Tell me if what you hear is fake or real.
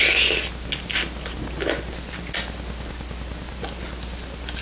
real